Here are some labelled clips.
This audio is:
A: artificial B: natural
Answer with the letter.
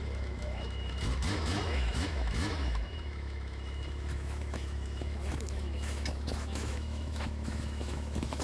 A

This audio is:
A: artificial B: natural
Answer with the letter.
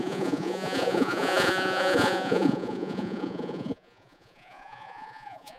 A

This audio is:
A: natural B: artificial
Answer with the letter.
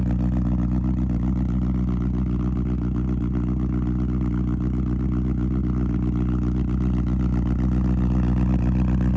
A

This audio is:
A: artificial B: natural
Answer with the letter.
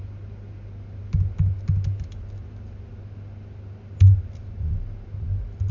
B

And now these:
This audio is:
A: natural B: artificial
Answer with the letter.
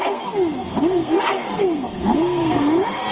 B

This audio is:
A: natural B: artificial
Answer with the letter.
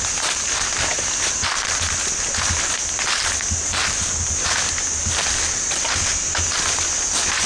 A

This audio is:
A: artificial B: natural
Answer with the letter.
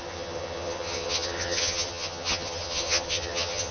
A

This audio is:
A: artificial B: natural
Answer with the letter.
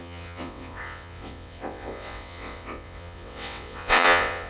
A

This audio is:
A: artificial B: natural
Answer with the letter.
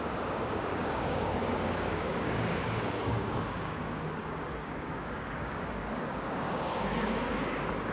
A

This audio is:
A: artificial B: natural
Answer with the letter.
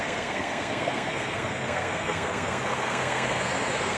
A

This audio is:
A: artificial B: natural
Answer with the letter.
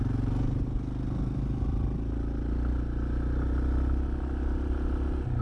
B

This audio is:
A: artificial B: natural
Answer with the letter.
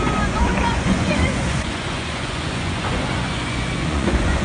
A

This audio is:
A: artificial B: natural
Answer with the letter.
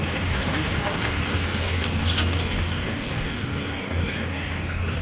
A